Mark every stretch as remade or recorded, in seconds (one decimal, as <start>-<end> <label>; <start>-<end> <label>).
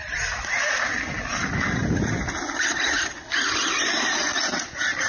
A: 0.0-5.1 recorded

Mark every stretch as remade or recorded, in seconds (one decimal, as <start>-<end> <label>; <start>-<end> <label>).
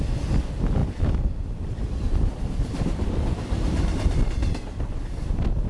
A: 0.0-0.8 recorded; 0.8-4.2 remade; 4.2-5.7 recorded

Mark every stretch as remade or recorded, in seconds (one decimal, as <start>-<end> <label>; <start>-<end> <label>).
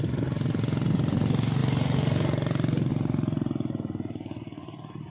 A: 0.0-1.6 recorded; 1.6-2.9 remade; 2.9-5.1 recorded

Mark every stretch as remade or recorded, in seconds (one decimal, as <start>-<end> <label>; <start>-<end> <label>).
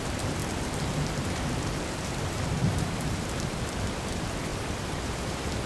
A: 0.0-0.4 remade; 0.4-1.2 recorded; 1.2-5.7 remade